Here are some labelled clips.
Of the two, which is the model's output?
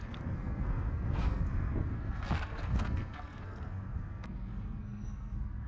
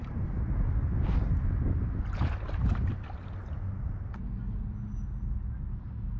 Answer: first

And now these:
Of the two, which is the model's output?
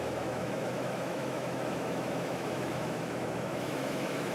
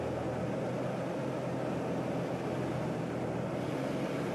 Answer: first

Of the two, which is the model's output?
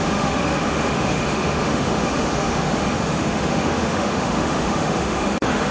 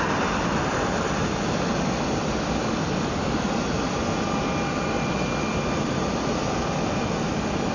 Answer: first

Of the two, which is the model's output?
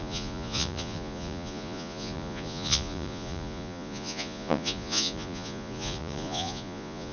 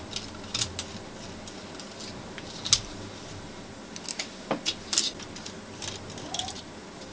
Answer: first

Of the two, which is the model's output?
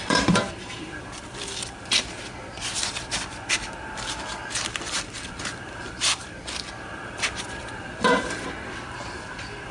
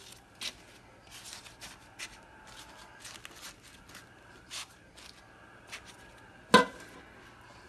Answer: first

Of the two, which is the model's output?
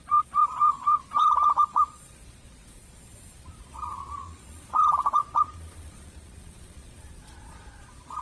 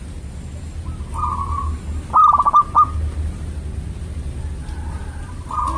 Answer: first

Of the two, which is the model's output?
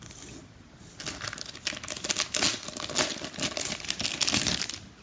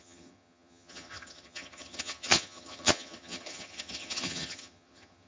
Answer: second